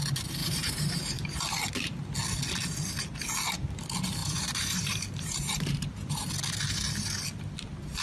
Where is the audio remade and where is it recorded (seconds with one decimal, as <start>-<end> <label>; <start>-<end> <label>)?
0.0-0.4 recorded; 0.4-1.4 remade; 1.4-4.2 recorded; 4.2-6.3 remade; 6.3-8.0 recorded